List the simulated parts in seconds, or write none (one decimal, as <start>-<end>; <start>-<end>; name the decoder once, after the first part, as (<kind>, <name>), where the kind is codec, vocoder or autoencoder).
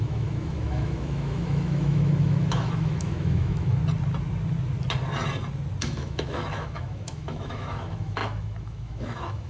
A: 0.0-3.8 (autoencoder, DAC-VAE); 5.8-9.5